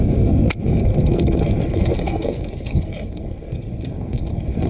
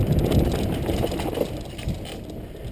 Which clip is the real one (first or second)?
second